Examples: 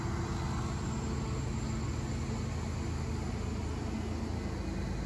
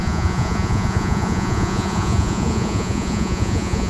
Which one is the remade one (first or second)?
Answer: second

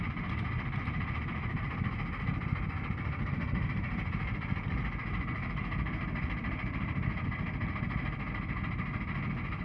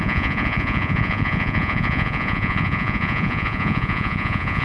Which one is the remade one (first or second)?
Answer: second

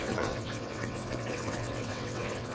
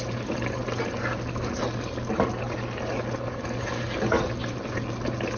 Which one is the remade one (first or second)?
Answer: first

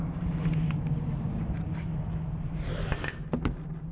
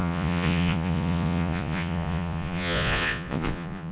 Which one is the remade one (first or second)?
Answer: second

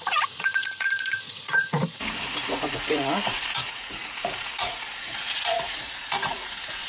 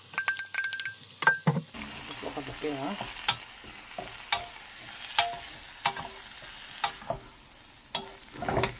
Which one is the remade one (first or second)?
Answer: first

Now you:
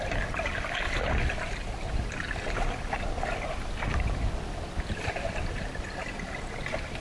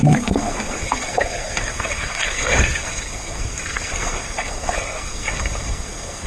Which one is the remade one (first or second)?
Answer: second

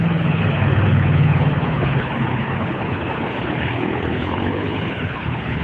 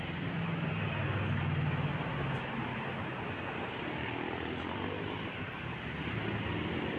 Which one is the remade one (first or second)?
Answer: first